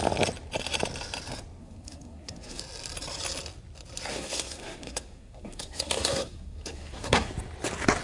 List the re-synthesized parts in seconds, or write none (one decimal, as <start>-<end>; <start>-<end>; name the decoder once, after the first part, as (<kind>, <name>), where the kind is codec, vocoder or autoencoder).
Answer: 1.6-2.6 (codec, SNAC); 4.1-7.3